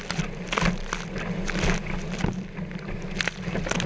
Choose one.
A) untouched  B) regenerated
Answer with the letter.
A